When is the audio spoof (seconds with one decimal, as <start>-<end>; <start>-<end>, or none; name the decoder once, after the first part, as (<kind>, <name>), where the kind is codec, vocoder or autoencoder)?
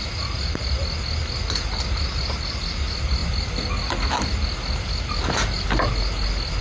none